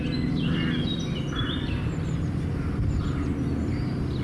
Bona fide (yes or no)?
yes